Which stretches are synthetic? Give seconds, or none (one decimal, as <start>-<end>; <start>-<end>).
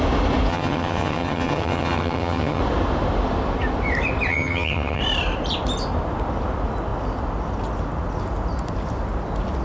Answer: 0.5-2.6; 4.3-5.0